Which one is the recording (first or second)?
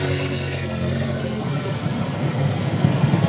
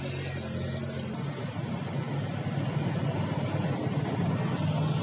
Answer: second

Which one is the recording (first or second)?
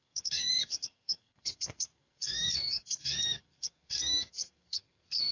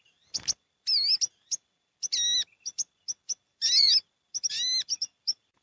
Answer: second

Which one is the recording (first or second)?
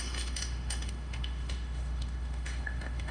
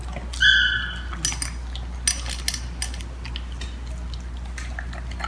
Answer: second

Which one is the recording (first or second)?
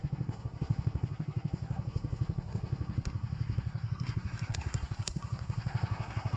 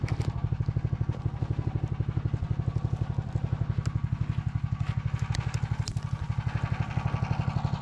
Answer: second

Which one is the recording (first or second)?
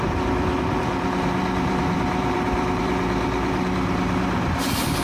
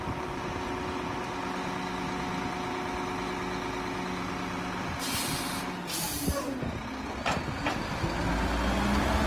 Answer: second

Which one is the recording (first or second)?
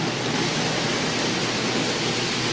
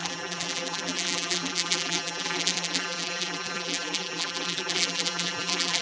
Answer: first